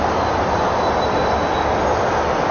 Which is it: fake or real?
real